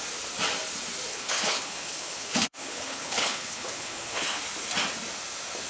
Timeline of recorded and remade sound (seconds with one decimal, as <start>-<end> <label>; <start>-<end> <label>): 0.0-1.1 recorded; 1.1-4.4 remade; 4.4-5.7 recorded